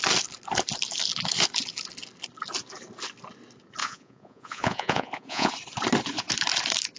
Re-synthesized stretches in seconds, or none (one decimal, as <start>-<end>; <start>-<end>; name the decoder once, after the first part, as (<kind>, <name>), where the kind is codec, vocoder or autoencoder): 3.8-5.5 (vocoder, Vocos)